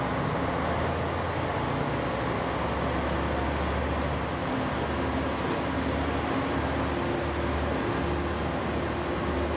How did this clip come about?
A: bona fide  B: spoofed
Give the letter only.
A